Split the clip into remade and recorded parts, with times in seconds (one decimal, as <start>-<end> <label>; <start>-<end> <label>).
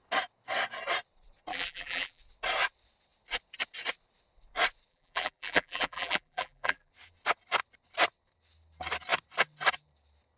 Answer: 0.0-1.5 recorded; 1.5-2.2 remade; 2.2-4.9 recorded; 4.9-6.9 remade; 6.9-10.4 recorded